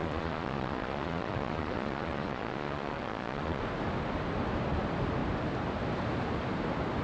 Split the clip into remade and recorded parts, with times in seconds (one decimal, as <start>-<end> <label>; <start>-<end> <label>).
0.0-3.6 remade; 3.6-7.0 recorded